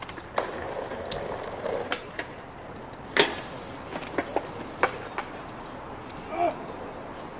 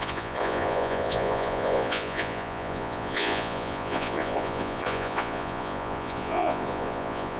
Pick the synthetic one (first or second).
second